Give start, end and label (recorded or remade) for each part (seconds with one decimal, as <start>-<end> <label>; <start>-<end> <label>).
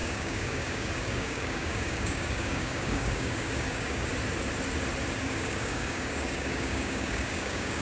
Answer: 0.0-4.1 remade; 4.1-5.2 recorded; 5.2-7.8 remade